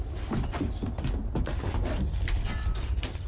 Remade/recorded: recorded